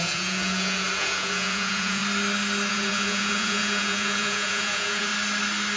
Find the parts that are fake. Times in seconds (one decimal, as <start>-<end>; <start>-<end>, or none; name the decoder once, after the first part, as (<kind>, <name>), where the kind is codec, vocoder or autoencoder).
0.0-2.0 (vocoder, Vocos); 2.7-5.1